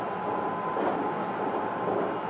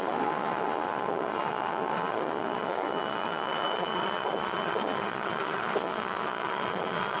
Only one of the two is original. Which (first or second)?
first